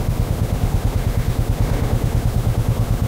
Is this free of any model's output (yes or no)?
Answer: no